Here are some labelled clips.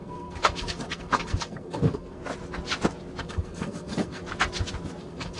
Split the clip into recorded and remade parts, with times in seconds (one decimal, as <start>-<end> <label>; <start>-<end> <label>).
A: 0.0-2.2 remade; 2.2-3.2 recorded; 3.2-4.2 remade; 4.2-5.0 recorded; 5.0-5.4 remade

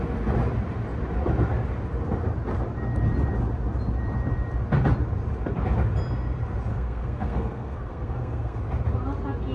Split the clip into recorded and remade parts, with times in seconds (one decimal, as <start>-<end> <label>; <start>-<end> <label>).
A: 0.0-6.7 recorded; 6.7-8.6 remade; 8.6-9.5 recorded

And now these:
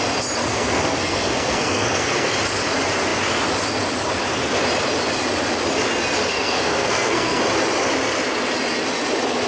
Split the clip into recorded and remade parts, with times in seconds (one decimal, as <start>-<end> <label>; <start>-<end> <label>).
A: 0.0-0.4 recorded; 0.4-2.3 remade; 2.3-6.2 recorded; 6.2-7.4 remade; 7.4-9.5 recorded

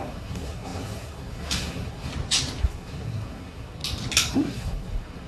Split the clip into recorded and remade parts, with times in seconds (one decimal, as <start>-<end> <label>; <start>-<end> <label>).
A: 0.0-2.1 remade; 2.1-2.6 recorded; 2.6-3.8 remade; 3.8-4.3 recorded; 4.3-5.3 remade